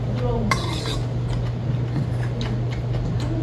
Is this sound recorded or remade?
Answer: recorded